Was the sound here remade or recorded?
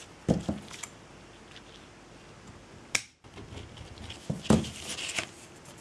recorded